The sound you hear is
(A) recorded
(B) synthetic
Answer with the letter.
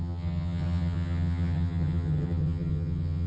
B